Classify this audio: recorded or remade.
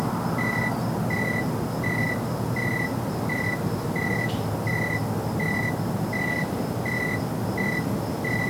recorded